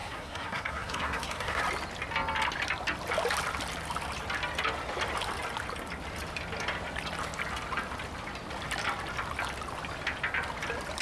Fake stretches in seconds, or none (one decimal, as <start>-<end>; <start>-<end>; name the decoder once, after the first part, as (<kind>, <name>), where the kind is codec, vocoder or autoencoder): 0.0-1.6 (codec, SNAC)